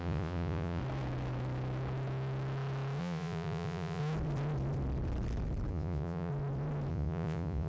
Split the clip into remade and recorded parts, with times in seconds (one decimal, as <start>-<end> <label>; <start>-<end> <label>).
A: 0.0-0.8 remade; 0.8-3.0 recorded; 3.0-4.0 remade; 4.0-5.7 recorded; 5.7-6.3 remade; 6.3-6.9 recorded; 6.9-7.7 remade